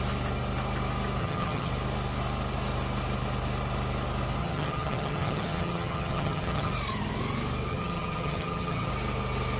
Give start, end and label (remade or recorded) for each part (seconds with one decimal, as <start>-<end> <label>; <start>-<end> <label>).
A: 0.0-1.2 recorded; 1.2-1.7 remade; 1.7-4.4 recorded; 4.4-6.7 remade; 6.7-7.7 recorded; 7.7-8.9 remade; 8.9-9.6 recorded